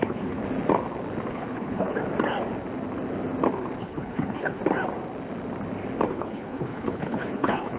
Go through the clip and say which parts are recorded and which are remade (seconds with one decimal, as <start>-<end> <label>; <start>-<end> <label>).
0.0-0.4 remade; 0.4-1.3 recorded; 1.3-2.0 remade; 2.0-3.8 recorded; 3.8-4.6 remade; 4.6-6.1 recorded; 6.1-7.8 remade